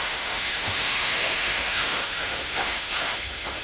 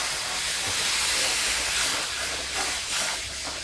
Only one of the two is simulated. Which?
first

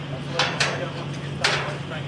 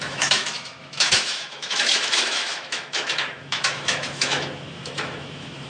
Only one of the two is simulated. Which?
second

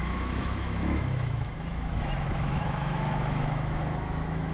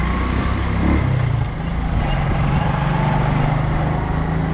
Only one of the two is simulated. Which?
first